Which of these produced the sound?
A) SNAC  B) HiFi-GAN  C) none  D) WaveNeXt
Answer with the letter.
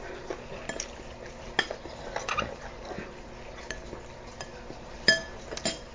C